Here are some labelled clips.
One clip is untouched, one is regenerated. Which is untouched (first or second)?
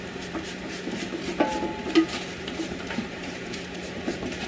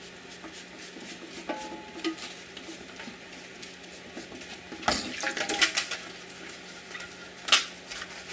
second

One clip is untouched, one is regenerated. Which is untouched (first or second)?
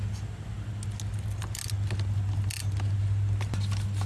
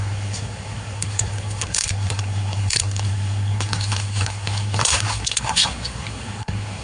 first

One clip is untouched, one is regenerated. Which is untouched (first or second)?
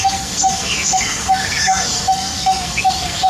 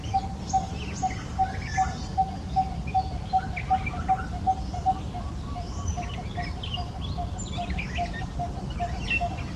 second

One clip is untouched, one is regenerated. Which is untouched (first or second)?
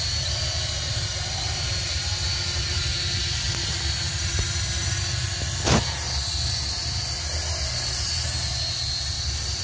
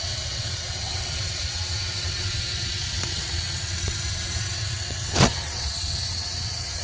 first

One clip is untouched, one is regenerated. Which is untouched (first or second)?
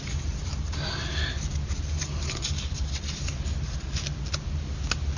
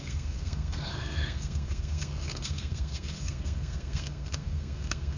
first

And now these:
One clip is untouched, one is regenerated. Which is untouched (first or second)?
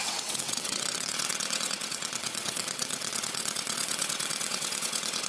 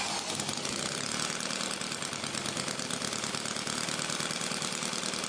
second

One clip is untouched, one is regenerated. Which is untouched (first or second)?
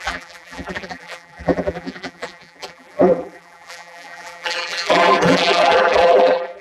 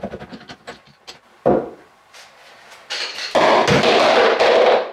second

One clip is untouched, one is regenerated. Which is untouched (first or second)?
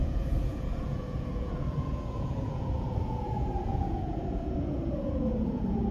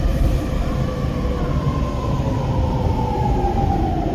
second